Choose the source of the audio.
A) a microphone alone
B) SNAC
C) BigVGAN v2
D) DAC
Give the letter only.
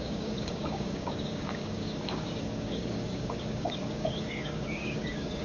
D